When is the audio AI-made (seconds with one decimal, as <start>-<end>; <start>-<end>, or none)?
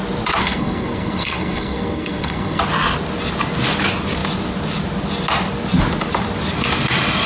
0.4-2.6